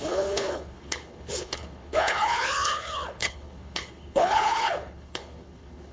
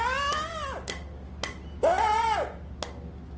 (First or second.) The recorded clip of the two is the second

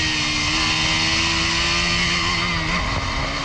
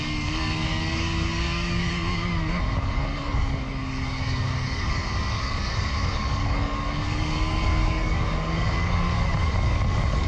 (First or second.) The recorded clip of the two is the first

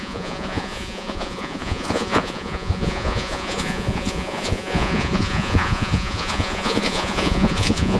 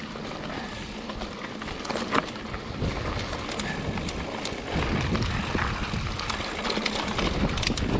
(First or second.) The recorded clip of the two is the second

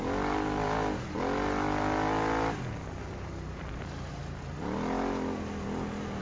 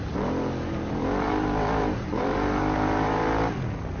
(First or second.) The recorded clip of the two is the first